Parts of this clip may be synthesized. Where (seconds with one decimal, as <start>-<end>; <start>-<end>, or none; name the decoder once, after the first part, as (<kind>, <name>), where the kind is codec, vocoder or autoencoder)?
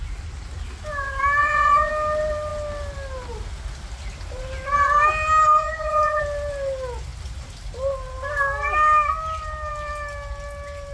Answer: 1.4-1.9 (vocoder, Vocos); 5.6-6.2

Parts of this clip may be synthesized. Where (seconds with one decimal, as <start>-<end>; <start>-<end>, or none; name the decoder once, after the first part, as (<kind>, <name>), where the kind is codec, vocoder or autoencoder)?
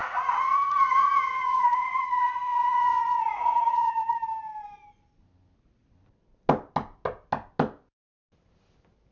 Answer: 0.0-4.1 (vocoder, Vocos)